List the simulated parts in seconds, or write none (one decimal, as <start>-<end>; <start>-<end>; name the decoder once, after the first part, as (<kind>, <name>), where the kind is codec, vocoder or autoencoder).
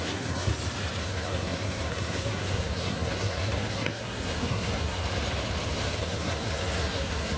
0.0-0.5 (codec, SNAC); 1.0-5.0; 6.0-7.4